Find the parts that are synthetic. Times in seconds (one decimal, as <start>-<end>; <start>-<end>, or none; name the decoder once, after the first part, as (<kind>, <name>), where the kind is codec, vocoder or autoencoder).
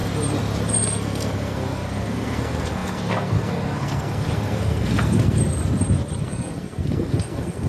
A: 0.7-5.4 (codec, SNAC); 6.2-7.7